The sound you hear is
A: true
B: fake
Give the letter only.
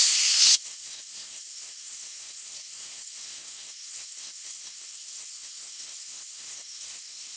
B